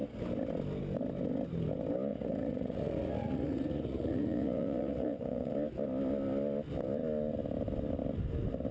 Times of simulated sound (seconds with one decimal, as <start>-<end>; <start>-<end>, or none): 2.1-5.5